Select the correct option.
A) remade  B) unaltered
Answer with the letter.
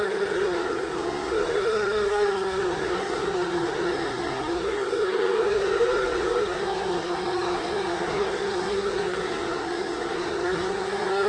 A